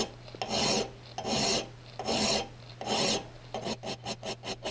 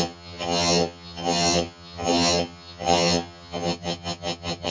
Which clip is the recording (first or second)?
first